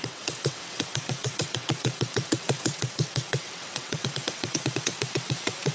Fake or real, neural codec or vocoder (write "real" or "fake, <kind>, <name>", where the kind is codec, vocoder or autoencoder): fake, vocoder, WaveNeXt